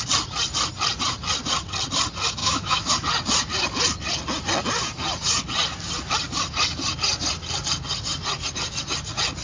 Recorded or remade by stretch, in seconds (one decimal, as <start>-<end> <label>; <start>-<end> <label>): 0.0-2.4 recorded; 2.4-2.9 remade; 2.9-9.4 recorded